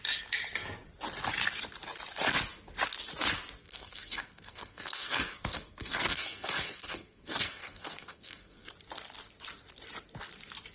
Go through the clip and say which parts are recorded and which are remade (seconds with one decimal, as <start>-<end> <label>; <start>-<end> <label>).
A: 0.0-3.6 recorded; 3.6-8.7 remade; 8.7-10.7 recorded